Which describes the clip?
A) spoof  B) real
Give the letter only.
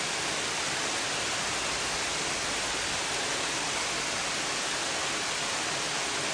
B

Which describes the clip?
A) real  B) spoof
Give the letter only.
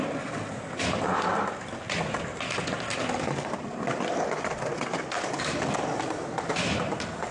A